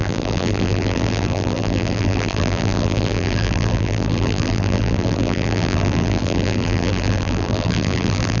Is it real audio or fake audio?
fake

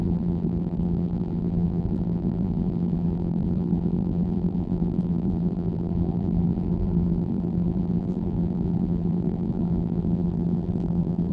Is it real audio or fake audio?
fake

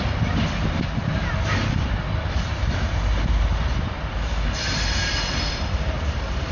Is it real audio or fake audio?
fake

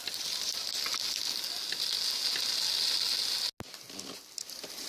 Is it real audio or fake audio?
real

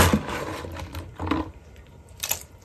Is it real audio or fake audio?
real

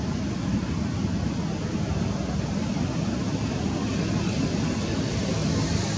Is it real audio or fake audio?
real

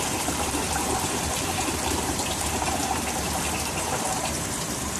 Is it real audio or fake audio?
fake